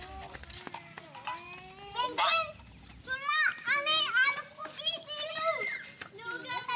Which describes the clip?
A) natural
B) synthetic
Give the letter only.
A